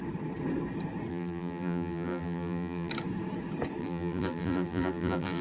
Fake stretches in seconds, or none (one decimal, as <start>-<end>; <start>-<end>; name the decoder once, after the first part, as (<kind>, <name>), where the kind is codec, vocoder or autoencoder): 1.1-2.9 (vocoder, BigVGAN v2); 3.8-5.4